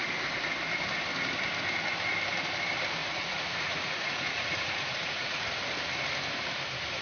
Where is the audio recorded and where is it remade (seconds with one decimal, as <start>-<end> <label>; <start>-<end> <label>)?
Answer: 0.0-3.0 recorded; 3.0-5.6 remade; 5.6-7.0 recorded